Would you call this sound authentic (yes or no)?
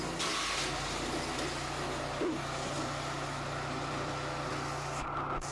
yes